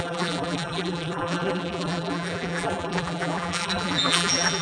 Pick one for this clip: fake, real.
fake